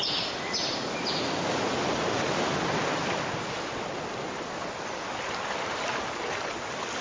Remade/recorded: recorded